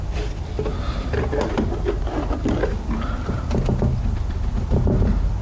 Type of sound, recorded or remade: remade